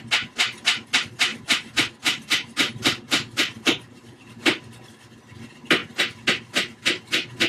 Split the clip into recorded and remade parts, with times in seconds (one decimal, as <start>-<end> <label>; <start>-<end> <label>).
0.0-1.3 recorded; 1.3-4.4 remade; 4.4-7.5 recorded